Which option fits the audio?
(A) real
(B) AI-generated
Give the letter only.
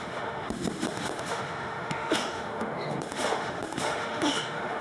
B